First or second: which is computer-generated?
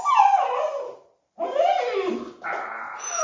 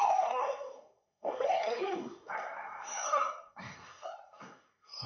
second